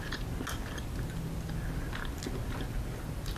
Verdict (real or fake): real